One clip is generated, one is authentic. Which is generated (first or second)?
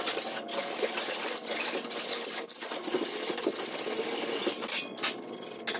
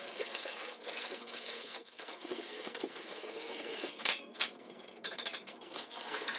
second